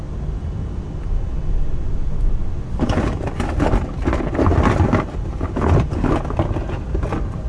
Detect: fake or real real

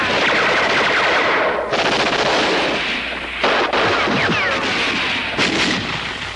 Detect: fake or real real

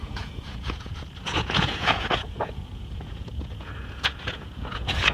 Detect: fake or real fake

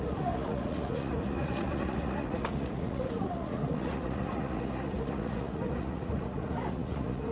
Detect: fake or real fake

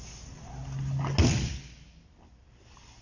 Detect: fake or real real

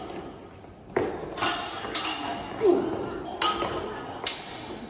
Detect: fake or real real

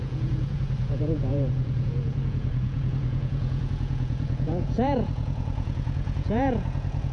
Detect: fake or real fake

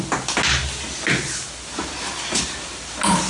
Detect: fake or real real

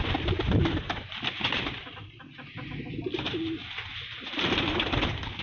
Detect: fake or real real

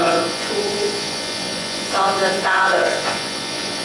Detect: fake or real fake